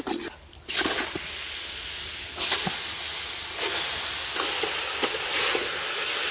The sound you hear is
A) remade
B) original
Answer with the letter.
B